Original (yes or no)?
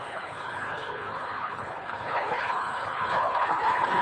no